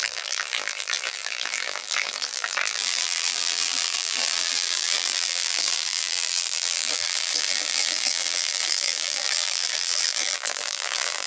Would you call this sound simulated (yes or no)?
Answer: yes